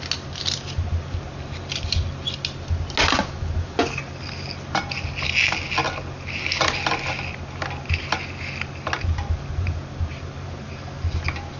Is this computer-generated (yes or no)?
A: no